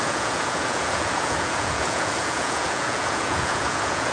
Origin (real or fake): fake